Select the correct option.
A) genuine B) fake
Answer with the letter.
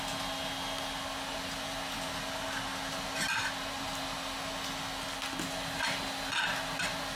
A